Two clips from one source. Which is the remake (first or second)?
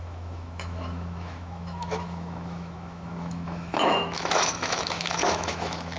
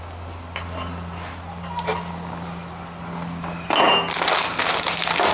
first